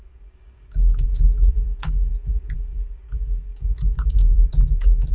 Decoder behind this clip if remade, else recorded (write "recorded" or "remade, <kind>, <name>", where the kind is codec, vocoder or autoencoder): remade, codec, DAC